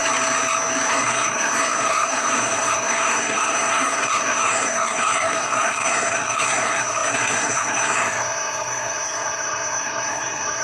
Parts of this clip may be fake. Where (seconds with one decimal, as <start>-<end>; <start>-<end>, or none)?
0.9-10.6